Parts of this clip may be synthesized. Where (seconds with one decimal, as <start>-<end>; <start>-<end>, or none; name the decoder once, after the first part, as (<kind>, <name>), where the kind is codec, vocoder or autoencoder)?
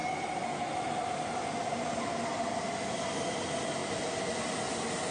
none